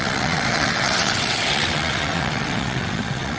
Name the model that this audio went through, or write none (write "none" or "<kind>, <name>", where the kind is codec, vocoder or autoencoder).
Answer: vocoder, WaveNeXt